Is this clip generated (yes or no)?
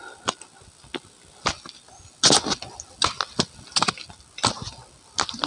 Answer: no